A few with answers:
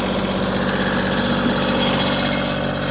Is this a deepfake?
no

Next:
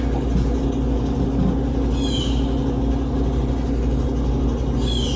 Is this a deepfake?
no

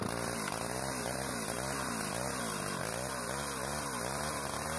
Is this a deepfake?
no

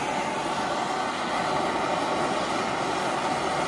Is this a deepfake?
no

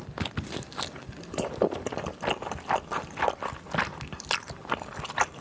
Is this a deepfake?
no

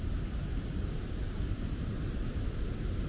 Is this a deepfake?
no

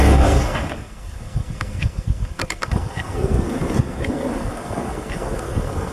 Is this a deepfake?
yes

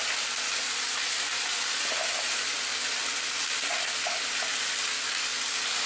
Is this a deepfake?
no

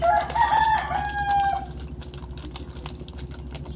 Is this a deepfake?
no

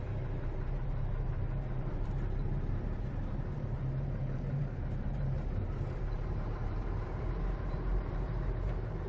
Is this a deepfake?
yes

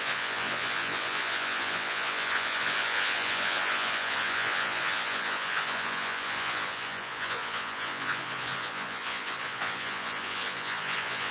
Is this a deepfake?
yes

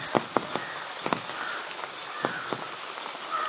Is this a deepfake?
no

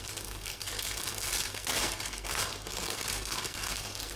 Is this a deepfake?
yes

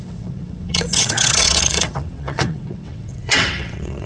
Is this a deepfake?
yes